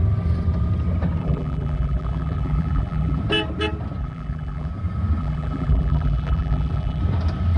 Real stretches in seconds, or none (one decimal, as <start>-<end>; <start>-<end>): 0.0-1.2; 3.2-4.0; 4.7-5.2; 7.0-7.6